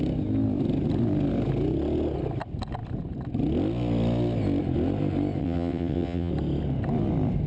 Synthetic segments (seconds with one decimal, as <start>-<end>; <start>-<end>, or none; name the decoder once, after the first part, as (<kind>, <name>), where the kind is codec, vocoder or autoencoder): 5.4-6.3 (vocoder, WaveNeXt)